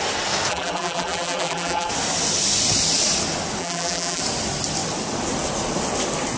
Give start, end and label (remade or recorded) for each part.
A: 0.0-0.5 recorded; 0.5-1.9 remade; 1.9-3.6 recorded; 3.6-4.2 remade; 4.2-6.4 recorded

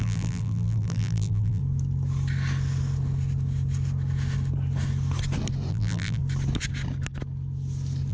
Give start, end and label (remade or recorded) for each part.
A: 0.0-1.6 remade; 1.6-5.7 recorded; 5.7-6.2 remade; 6.2-8.1 recorded

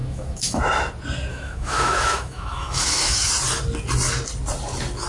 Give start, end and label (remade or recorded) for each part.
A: 0.0-0.6 remade; 0.6-1.3 recorded; 1.3-3.3 remade; 3.3-5.1 recorded

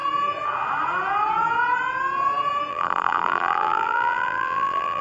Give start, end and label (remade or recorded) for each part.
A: 0.0-2.7 recorded; 2.7-5.0 remade

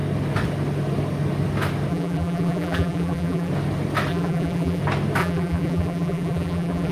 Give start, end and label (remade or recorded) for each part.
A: 0.0-1.9 recorded; 1.9-3.5 remade; 3.5-4.1 recorded; 4.1-4.8 remade; 4.8-5.2 recorded; 5.2-6.9 remade

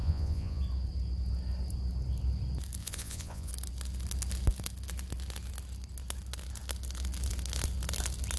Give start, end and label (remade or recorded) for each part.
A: 0.0-0.6 remade; 0.6-2.8 recorded; 2.8-3.5 remade; 3.5-8.4 recorded